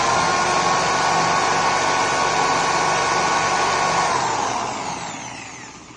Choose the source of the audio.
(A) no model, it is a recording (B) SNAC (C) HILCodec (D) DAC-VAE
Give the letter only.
A